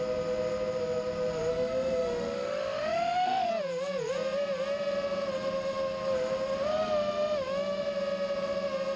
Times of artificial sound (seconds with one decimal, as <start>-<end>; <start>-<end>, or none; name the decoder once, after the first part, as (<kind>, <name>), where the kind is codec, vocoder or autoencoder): 1.5-3.5 (autoencoder, DAC-VAE)